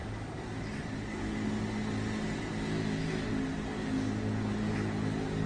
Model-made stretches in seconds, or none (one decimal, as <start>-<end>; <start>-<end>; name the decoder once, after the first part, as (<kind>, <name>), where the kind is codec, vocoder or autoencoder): none